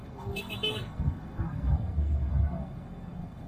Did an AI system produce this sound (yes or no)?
yes